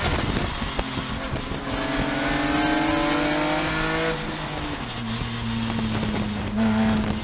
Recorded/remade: recorded